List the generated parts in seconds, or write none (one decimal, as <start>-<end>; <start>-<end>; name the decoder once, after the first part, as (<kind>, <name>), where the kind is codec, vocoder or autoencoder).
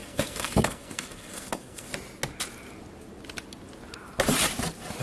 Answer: 0.0-1.9 (codec, SNAC)